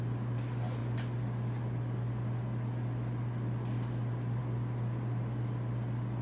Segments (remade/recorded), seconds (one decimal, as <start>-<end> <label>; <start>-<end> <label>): 0.0-6.2 recorded